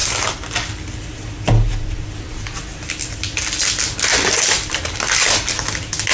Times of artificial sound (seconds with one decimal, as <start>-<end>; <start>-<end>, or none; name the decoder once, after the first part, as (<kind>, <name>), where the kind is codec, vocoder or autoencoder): none